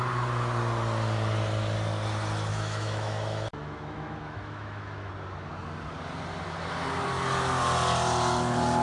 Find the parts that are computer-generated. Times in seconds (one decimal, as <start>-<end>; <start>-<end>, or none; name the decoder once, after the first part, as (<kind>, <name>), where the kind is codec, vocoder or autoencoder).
2.5-5.1 (autoencoder, DAC-VAE)